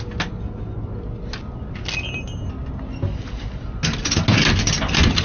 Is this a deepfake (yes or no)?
no